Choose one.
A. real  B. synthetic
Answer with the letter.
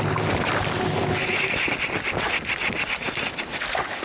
A